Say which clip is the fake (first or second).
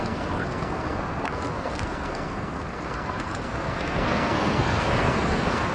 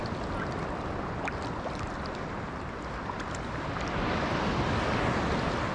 first